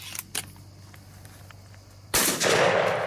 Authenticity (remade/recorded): recorded